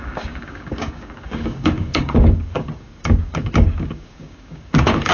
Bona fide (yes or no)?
no